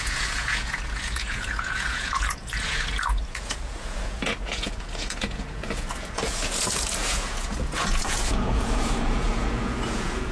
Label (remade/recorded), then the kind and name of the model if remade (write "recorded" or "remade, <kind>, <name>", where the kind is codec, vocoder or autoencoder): remade, vocoder, Vocos